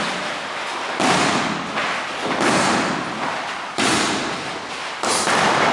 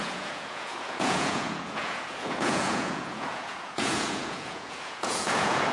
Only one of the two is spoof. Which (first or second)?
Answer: second